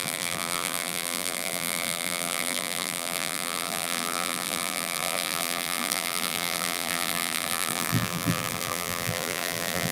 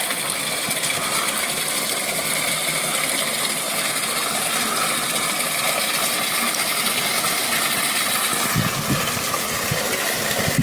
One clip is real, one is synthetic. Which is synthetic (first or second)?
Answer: first